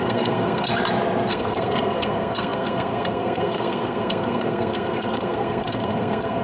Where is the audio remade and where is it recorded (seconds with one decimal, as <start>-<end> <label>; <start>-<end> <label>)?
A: 0.0-0.7 remade; 0.7-1.3 recorded; 1.3-6.4 remade

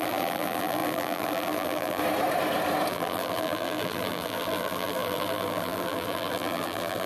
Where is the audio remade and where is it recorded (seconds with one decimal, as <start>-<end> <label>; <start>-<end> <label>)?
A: 0.0-2.0 remade; 2.0-2.9 recorded; 2.9-7.1 remade

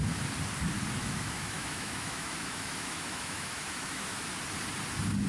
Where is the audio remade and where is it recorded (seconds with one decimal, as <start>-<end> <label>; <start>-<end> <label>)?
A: 0.0-1.0 recorded; 1.0-4.2 remade; 4.2-5.3 recorded

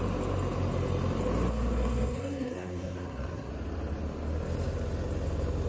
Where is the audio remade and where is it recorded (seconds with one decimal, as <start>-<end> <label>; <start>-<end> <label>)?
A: 0.0-1.5 recorded; 1.5-3.5 remade; 3.5-5.7 recorded

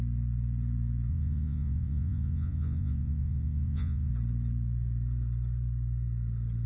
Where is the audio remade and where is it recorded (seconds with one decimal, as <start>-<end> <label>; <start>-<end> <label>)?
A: 0.0-1.1 recorded; 1.1-4.1 remade; 4.1-6.7 recorded

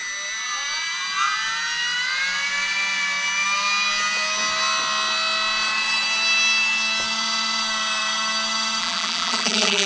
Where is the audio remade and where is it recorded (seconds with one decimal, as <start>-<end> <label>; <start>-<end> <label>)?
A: 0.0-8.8 recorded; 8.8-9.9 remade

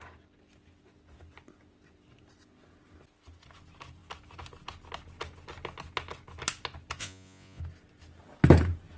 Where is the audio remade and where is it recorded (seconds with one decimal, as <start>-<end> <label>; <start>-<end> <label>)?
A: 0.0-7.0 recorded; 7.0-7.6 remade; 7.6-9.0 recorded

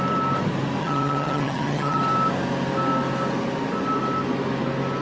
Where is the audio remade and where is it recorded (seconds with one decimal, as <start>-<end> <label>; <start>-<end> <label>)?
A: 0.0-0.8 recorded; 0.8-2.0 remade; 2.0-5.0 recorded